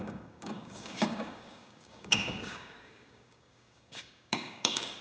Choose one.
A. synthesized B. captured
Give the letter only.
A